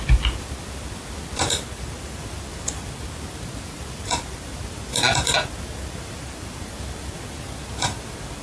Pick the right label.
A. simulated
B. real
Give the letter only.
B